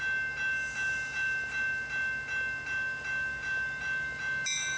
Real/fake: real